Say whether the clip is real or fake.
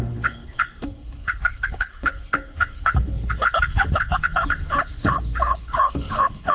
fake